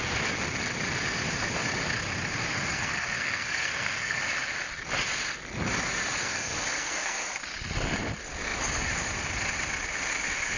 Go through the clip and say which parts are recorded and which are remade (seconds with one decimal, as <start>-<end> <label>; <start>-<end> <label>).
0.0-2.7 recorded; 2.7-4.2 remade; 4.2-6.2 recorded; 6.2-7.2 remade; 7.2-10.6 recorded